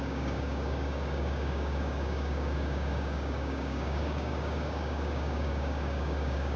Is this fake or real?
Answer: fake